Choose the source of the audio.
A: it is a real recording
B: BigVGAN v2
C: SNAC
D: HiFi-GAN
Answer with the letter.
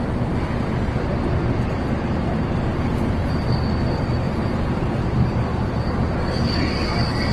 B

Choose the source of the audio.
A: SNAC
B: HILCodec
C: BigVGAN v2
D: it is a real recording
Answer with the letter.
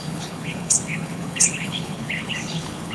B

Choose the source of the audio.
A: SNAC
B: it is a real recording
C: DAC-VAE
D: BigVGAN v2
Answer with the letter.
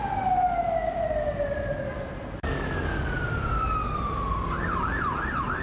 B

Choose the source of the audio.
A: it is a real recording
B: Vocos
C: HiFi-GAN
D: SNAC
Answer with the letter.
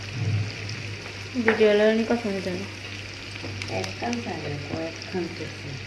A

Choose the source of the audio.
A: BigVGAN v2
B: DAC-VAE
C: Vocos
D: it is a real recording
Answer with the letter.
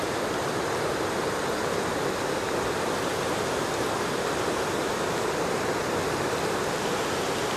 D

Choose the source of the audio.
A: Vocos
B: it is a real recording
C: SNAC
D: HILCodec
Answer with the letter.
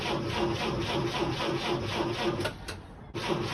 B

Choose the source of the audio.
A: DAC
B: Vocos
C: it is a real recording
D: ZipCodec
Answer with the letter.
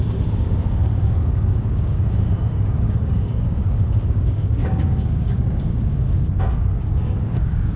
A